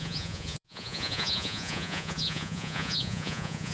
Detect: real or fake fake